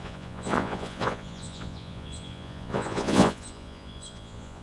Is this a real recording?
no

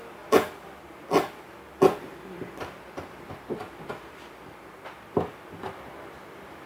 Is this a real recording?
yes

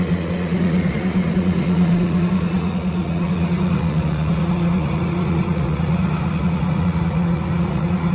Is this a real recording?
no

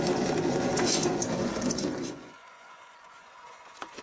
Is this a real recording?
no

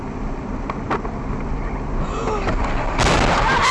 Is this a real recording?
yes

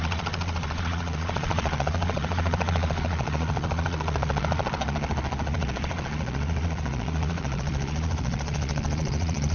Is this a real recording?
no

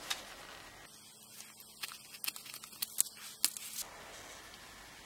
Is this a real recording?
yes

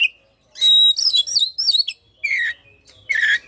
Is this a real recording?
yes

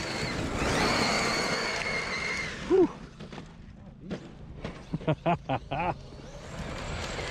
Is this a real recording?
yes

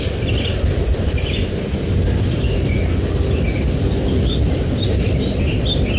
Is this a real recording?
yes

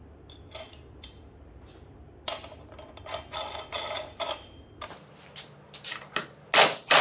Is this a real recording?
yes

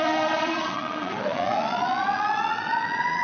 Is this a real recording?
no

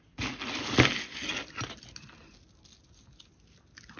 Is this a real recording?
yes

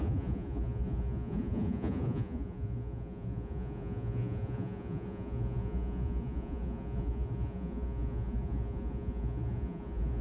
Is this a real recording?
no